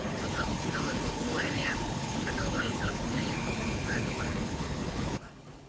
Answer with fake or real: fake